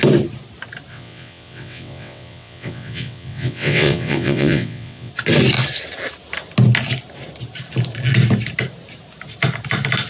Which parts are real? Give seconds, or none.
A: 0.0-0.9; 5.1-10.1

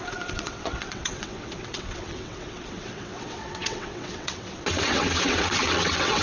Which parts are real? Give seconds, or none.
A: none